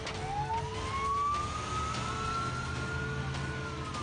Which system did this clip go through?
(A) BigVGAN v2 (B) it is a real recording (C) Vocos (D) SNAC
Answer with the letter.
B